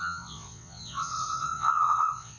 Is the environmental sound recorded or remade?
remade